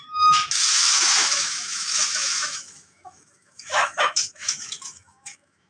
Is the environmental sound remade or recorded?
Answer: remade